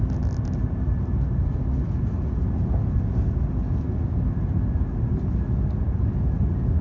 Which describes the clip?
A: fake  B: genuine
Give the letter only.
B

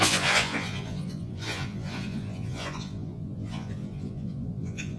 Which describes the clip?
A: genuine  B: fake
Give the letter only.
B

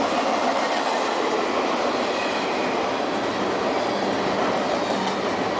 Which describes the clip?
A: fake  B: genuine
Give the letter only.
B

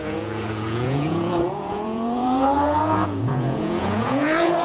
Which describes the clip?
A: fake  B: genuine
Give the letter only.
A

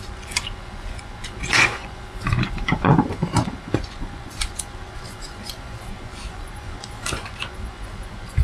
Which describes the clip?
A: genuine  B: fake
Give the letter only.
B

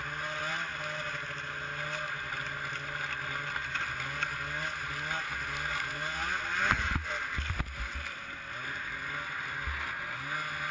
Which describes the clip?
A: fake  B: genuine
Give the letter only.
B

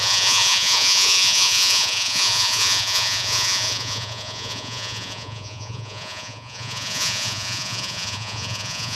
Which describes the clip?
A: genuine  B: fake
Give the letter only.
B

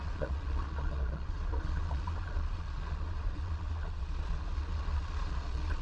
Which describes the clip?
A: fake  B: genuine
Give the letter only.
A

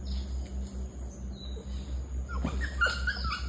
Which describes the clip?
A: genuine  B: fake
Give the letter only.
A